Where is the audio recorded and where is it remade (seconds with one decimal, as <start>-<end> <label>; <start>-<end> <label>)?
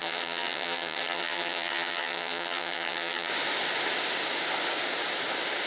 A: 0.0-3.3 remade; 3.3-5.7 recorded